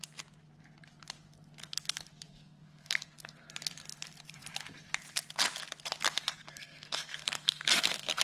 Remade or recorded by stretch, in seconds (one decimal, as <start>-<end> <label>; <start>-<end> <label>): 0.0-2.3 recorded; 2.3-3.5 remade; 3.5-6.4 recorded; 6.4-8.2 remade